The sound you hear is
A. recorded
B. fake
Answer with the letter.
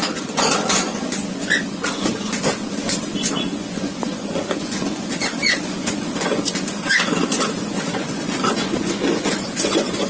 B